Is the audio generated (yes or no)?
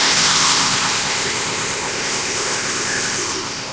yes